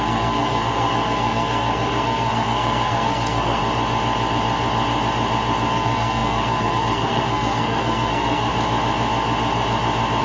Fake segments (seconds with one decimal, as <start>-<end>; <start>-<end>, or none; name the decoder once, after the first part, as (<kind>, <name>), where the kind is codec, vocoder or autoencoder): 0.0-3.6 (codec, SNAC); 5.7-8.5